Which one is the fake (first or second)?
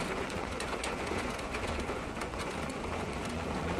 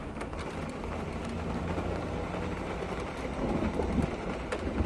first